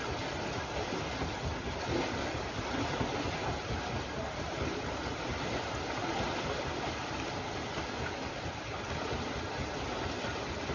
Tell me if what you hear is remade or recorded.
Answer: recorded